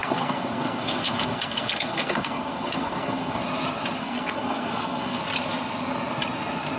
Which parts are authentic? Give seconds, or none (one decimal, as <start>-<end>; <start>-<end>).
3.4-4.0; 5.2-6.8